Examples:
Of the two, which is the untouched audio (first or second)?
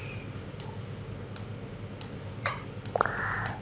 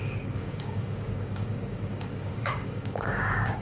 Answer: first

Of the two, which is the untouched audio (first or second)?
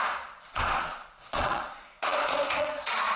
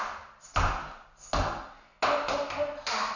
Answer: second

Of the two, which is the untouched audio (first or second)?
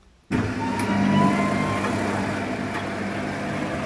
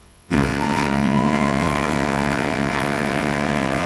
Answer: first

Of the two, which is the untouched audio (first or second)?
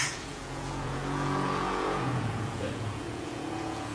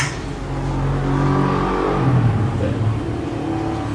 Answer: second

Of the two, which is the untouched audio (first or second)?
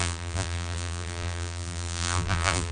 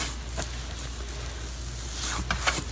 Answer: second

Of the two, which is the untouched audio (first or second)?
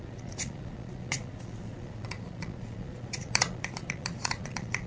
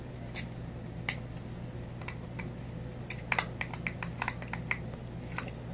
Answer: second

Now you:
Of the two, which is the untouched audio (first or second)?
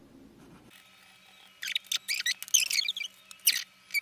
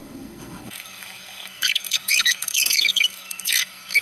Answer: first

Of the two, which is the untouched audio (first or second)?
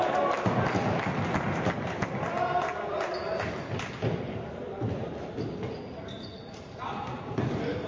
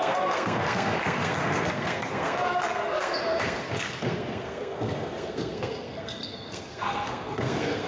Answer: first